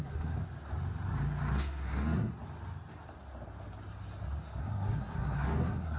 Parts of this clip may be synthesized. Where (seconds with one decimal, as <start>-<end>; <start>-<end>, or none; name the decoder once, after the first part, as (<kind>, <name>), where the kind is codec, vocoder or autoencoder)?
0.0-0.4 (codec, SNAC); 1.5-2.3; 4.6-6.0